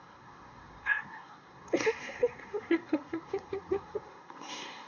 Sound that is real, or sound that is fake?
fake